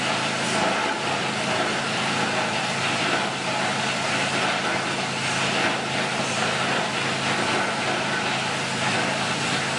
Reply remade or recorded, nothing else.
recorded